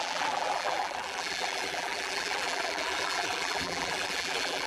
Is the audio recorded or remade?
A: remade